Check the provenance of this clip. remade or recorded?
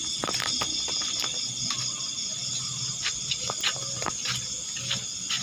recorded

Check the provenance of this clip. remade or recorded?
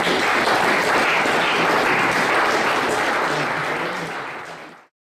recorded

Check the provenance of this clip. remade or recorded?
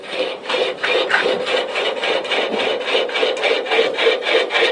recorded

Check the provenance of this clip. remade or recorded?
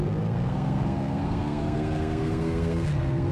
remade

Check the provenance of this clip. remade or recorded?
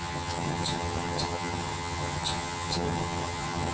remade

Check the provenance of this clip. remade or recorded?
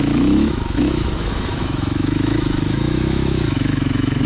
remade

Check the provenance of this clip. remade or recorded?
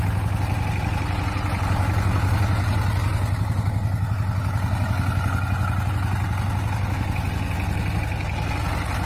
recorded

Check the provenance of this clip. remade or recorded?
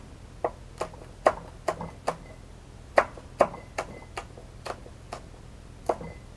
recorded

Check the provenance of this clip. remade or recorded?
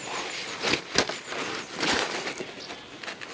recorded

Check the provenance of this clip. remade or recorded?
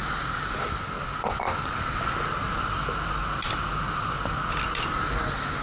recorded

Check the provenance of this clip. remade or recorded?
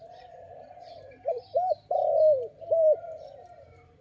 remade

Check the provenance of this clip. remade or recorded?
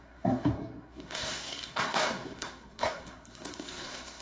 remade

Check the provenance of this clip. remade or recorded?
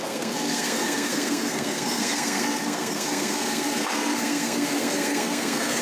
remade